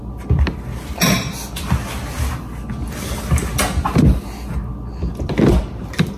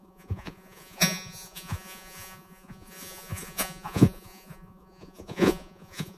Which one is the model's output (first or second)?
second